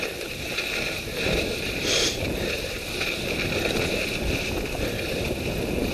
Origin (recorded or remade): remade